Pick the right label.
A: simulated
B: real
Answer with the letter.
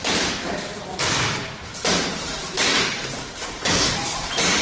B